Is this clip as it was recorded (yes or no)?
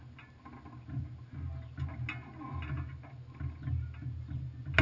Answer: yes